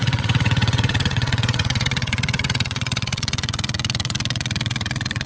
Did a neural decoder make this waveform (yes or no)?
yes